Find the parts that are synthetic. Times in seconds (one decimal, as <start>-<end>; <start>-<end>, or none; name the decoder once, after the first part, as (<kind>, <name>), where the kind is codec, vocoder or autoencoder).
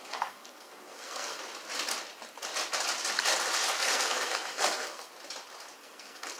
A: 0.0-1.4 (codec, SNAC); 3.7-5.1; 5.8-6.4